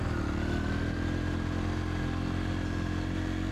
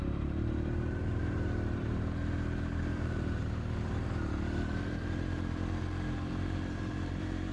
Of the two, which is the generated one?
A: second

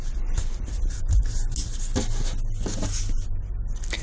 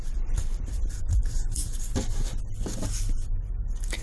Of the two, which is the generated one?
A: second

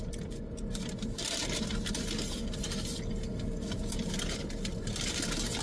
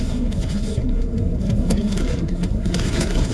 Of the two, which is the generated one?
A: second